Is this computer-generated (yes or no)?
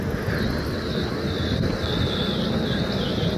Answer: no